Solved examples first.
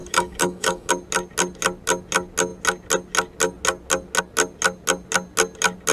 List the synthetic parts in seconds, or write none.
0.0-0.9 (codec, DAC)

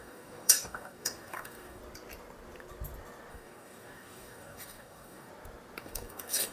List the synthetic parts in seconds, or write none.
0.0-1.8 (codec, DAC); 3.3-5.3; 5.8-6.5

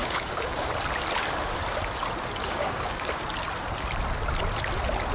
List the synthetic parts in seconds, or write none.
0.0-0.7 (codec, DAC); 2.4-3.1

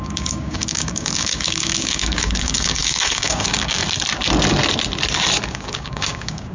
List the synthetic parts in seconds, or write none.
0.0-3.8 (codec, DAC); 5.5-6.5

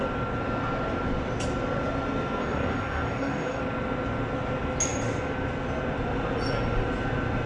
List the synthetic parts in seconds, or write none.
2.4-3.6 (codec, DAC)

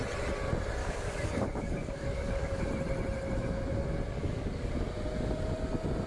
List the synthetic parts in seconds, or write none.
0.8-2.7 (codec, DAC); 4.1-4.7

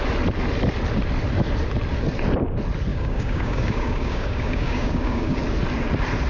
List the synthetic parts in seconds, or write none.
2.9-5.4 (codec, DAC)